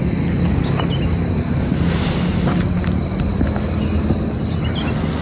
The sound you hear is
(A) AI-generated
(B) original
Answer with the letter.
B